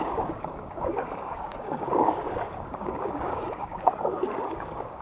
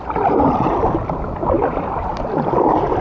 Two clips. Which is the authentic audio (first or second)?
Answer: second